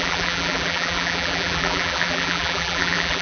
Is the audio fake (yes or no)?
yes